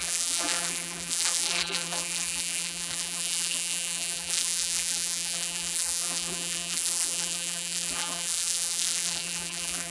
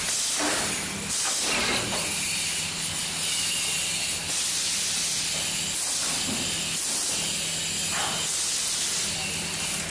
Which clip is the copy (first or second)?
first